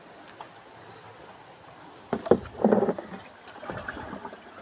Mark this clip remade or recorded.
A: recorded